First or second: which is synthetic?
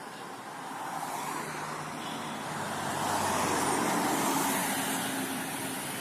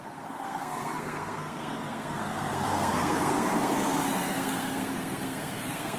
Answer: second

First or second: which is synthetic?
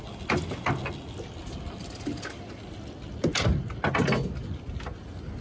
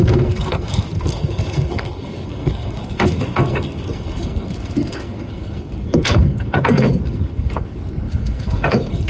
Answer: second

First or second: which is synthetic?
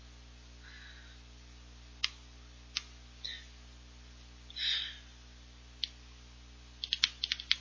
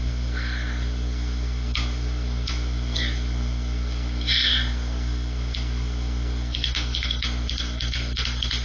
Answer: second